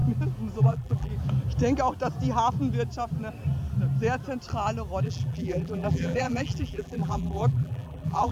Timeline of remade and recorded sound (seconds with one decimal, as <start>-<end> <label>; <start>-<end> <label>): 0.0-0.6 recorded; 0.6-1.1 remade; 1.1-5.0 recorded; 5.0-8.3 remade